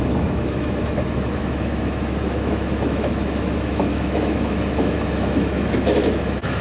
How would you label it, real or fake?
fake